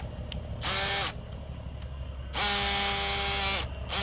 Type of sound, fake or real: real